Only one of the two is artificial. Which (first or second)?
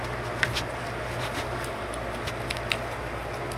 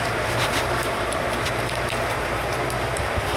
second